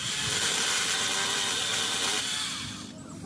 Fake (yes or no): no